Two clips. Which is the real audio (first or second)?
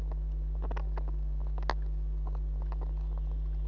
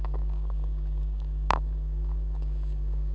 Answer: first